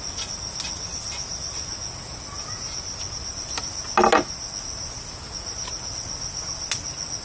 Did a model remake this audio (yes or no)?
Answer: no